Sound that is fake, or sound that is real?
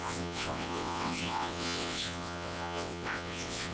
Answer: fake